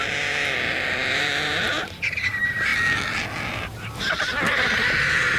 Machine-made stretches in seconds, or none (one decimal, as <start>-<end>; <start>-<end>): 0.0-2.7

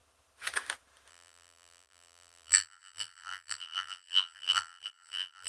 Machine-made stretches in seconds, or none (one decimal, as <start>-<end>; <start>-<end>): 1.1-5.5

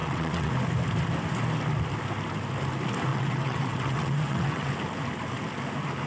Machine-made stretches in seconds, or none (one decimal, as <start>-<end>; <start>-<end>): 0.0-0.5; 3.1-4.7

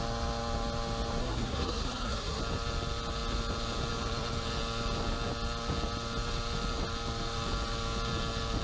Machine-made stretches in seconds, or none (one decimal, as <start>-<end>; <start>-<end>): 1.2-2.4

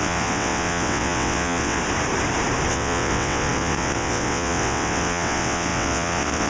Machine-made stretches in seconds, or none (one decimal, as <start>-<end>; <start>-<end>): 0.0-1.8; 2.7-6.5